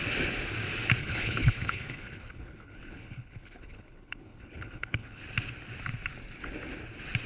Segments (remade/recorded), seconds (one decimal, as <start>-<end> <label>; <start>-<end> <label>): 0.0-1.0 recorded; 1.0-5.2 remade; 5.2-7.3 recorded